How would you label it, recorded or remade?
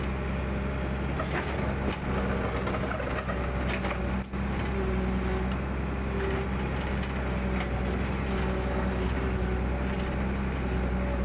recorded